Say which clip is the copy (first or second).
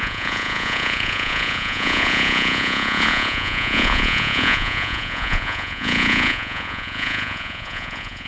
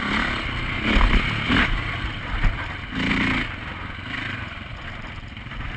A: first